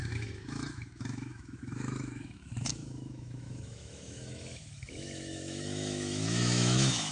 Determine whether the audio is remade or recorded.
remade